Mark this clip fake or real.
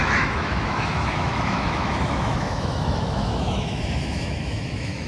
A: fake